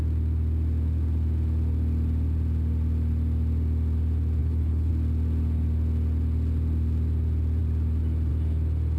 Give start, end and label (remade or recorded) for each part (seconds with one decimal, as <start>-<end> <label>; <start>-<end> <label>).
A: 0.0-4.4 recorded; 4.4-4.9 remade; 4.9-9.0 recorded